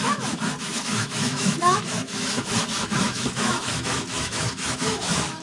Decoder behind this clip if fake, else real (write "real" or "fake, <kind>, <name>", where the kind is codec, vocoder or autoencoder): fake, autoencoder, DAC-VAE